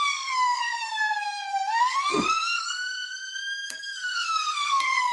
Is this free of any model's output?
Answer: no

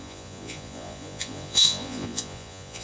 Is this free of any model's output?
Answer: no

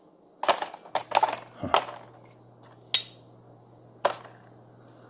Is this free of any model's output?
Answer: yes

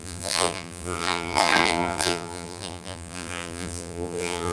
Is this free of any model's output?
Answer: no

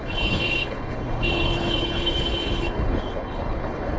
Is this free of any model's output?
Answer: no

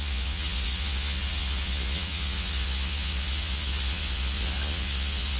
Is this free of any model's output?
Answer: no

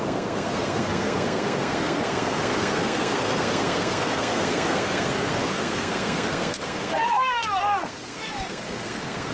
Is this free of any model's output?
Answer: no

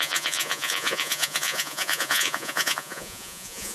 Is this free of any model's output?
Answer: no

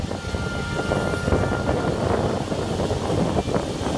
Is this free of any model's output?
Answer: yes